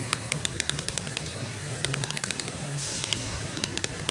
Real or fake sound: fake